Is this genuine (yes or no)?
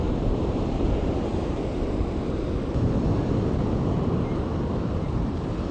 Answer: yes